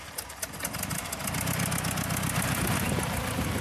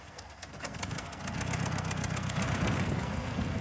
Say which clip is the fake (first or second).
second